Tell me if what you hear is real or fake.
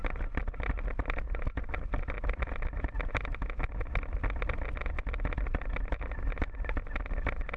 real